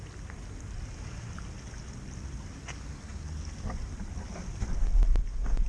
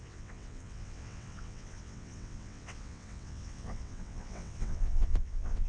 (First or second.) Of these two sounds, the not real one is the second